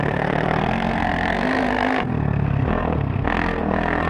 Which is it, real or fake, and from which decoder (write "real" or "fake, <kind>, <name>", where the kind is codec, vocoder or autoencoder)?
fake, codec, SNAC